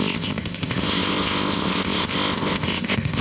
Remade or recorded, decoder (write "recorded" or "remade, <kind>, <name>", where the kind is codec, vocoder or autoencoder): remade, codec, ZipCodec